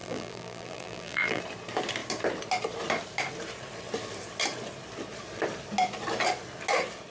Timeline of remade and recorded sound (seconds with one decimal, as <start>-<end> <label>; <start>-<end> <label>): 0.0-1.4 remade; 1.4-7.1 recorded